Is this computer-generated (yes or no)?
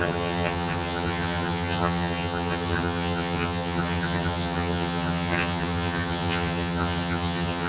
yes